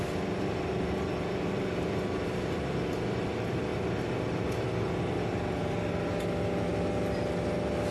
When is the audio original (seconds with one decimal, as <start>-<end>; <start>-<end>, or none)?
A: 0.0-3.7; 5.0-7.9